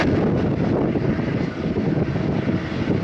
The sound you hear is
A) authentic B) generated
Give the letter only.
A